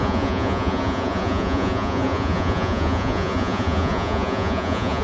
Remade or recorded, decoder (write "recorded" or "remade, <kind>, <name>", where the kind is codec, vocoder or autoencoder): remade, vocoder, Vocos